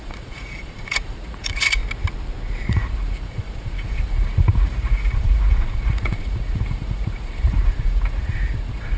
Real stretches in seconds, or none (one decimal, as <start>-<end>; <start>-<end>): 1.8-2.7